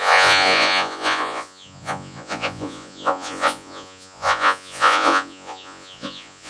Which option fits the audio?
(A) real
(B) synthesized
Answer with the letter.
B